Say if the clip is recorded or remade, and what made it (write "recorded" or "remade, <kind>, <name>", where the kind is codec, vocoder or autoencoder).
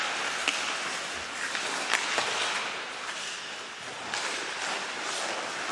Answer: recorded